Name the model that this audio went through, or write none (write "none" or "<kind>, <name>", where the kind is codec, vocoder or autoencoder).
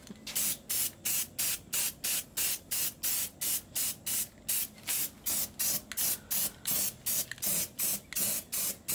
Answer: none